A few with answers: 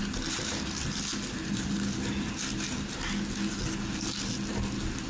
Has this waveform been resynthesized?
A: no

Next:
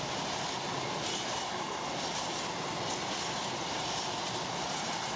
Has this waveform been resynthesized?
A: no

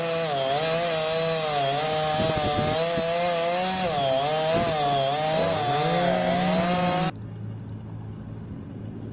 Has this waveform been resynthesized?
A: no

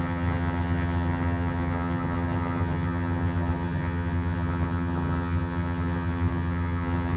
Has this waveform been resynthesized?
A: yes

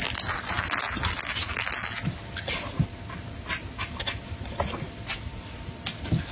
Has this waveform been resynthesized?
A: no